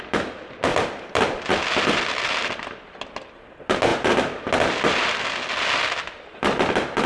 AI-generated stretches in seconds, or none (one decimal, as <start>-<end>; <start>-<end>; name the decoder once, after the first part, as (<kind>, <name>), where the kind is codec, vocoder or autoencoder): 0.7-1.6 (vocoder, BigVGAN v2)